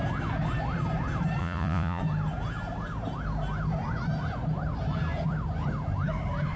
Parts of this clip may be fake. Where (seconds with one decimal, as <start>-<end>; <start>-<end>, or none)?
1.4-2.0